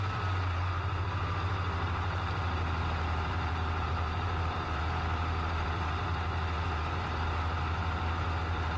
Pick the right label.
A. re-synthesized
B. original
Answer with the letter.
A